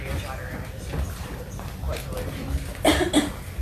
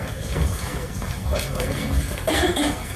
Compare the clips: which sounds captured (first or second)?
first